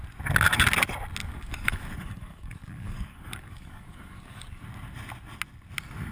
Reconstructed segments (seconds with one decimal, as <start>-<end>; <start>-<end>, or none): 1.2-4.6